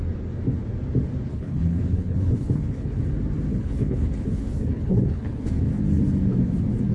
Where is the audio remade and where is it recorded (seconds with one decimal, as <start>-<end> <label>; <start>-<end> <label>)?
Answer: 0.0-1.3 recorded; 1.3-3.0 remade; 3.0-3.5 recorded; 3.5-5.8 remade; 5.8-6.9 recorded